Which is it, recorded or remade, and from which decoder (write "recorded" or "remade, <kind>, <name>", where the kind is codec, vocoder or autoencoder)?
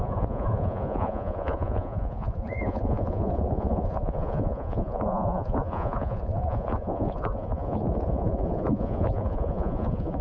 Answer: remade, vocoder, Vocos